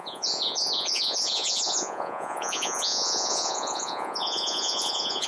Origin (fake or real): fake